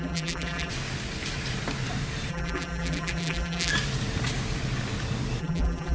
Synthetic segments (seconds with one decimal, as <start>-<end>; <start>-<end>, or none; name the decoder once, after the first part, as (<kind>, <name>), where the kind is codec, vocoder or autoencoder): 0.0-0.7 (vocoder, BigVGAN v2); 2.3-3.7; 5.4-5.9